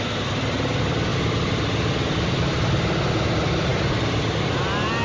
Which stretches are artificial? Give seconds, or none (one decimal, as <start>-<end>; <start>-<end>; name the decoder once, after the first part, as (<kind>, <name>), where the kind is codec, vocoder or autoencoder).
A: none